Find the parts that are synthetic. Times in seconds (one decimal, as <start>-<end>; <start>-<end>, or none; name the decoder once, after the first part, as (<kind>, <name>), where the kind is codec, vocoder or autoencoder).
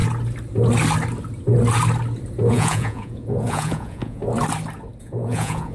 2.5-4.2 (vocoder, Vocos); 5.0-5.7